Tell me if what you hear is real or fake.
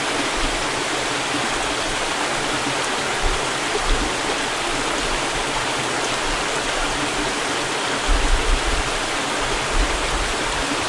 real